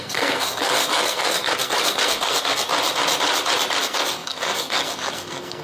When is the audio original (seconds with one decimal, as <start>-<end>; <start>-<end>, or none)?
2.7-3.8